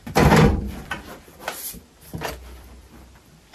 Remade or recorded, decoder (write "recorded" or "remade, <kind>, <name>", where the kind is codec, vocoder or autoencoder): remade, vocoder, BigVGAN v2